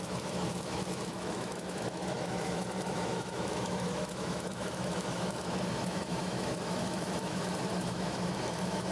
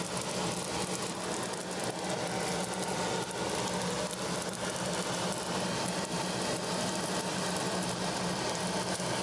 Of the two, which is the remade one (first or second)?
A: first